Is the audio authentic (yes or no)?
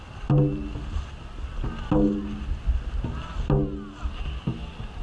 yes